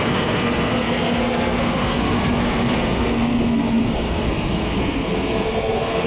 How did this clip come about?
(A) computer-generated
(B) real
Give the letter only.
A